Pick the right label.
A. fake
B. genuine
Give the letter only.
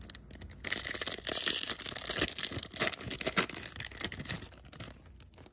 B